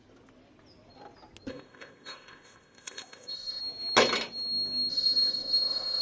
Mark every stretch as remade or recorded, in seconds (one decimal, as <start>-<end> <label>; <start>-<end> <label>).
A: 0.0-1.5 recorded; 1.5-3.6 remade; 3.6-4.9 recorded; 4.9-6.0 remade